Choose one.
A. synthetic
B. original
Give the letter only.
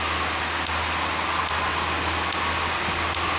B